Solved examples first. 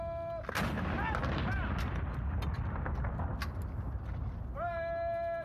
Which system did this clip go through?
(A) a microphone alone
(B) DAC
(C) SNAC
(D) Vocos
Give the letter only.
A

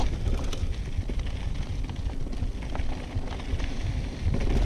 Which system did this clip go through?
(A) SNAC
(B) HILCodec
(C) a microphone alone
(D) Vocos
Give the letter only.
C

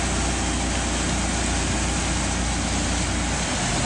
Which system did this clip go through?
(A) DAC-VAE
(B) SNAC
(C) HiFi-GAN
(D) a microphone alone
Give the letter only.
D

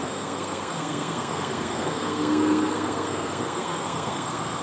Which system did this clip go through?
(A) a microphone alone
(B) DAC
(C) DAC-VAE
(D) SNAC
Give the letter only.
D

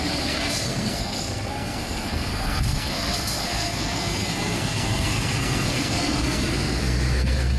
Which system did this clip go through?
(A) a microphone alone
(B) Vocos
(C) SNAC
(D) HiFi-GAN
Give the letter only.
C